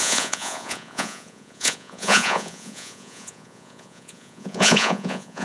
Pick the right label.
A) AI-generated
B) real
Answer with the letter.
A